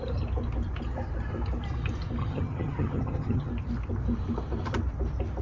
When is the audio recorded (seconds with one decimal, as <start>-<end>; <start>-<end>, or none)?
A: 0.0-2.2; 3.5-5.4